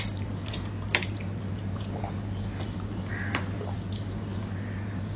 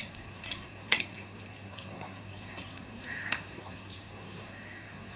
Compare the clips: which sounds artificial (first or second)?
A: second